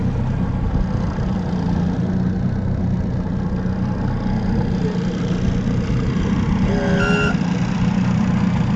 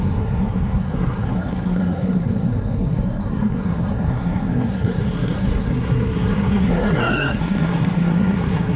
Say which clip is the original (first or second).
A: first